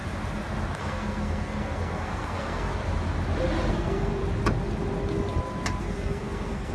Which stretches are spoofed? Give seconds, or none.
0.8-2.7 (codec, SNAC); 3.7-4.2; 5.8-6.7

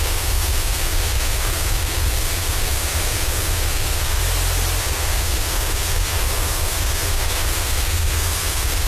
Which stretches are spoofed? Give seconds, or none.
0.0-4.2 (codec, SNAC); 4.8-8.9

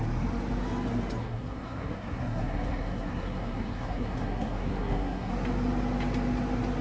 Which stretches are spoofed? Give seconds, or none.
1.2-5.3 (codec, SNAC)

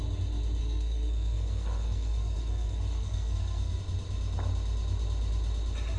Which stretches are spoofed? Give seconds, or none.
0.6-3.8 (codec, SNAC)

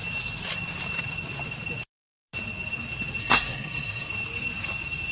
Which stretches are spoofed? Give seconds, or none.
3.2-4.1 (codec, SNAC)

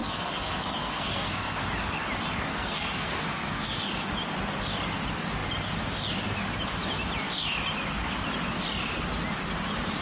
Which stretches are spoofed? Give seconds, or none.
0.0-1.6 (codec, SNAC); 2.5-3.8